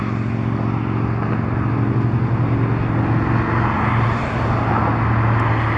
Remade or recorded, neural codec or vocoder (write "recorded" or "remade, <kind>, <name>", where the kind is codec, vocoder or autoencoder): recorded